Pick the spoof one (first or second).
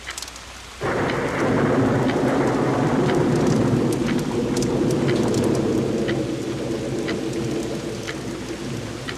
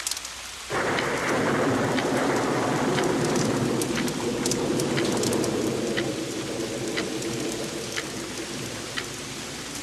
second